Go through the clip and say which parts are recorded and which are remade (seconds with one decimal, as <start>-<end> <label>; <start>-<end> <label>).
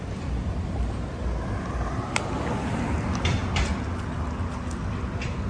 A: 0.0-5.5 recorded